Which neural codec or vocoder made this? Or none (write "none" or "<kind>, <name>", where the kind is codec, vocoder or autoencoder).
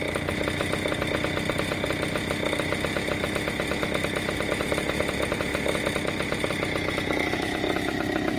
none